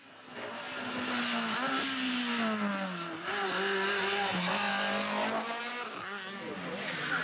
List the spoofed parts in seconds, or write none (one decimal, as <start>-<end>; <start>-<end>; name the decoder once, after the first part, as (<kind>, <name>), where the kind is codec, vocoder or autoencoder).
none